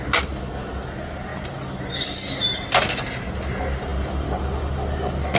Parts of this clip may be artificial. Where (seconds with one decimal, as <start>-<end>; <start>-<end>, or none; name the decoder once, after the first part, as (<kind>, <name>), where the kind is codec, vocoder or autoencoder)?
none